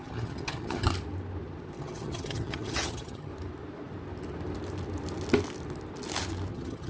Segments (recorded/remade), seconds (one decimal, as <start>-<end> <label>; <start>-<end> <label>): 0.0-0.9 remade; 0.9-1.8 recorded; 1.8-3.3 remade; 3.3-6.5 recorded; 6.5-6.9 remade